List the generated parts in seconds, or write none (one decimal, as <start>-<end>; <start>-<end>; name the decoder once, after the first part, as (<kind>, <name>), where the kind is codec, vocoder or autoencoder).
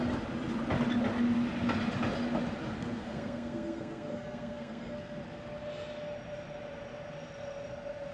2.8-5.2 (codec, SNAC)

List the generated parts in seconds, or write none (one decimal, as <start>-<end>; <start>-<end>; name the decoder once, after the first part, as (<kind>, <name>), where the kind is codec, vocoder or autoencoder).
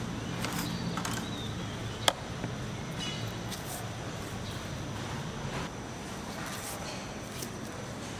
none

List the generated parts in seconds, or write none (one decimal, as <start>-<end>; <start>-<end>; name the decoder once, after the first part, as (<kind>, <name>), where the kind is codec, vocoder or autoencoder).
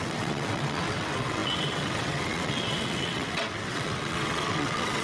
0.0-5.0 (vocoder, WaveNeXt)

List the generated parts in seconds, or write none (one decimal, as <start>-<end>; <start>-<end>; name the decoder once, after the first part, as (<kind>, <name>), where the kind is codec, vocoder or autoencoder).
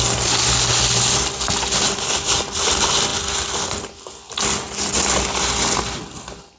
none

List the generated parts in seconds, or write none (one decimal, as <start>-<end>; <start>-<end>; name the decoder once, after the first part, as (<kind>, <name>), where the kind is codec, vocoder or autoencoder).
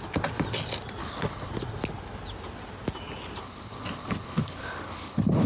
1.0-1.5 (codec, HILCodec); 3.4-5.5